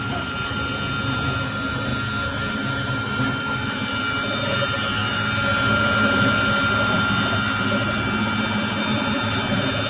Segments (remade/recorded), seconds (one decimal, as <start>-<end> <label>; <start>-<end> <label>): 0.0-9.9 recorded